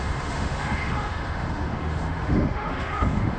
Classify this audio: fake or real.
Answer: fake